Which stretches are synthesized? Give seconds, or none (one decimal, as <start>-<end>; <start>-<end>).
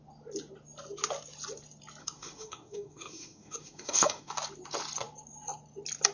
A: 2.0-4.3